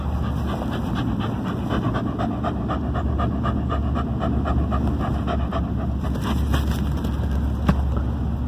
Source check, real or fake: real